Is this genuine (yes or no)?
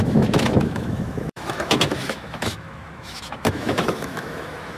no